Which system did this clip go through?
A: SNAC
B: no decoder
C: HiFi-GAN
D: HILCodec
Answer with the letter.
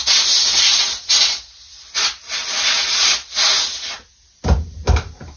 B